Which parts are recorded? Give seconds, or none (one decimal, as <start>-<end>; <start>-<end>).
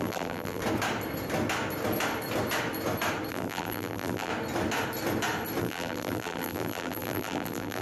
0.6-3.3; 4.3-5.6